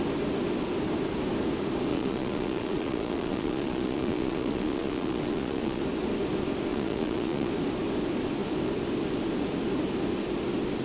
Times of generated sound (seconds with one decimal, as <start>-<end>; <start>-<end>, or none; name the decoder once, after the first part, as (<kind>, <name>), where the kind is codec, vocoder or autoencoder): 1.9-5.8 (vocoder, Vocos); 6.7-7.5